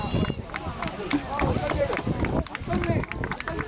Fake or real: fake